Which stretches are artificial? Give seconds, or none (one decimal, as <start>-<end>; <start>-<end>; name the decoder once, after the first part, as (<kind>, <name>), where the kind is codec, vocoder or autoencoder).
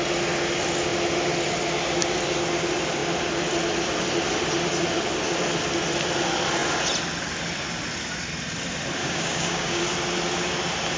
9.0-9.8 (codec, DAC)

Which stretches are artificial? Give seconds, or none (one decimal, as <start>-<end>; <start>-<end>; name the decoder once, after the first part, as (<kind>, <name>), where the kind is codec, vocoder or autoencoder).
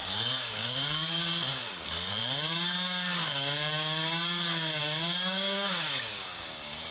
0.0-6.9 (codec, DAC)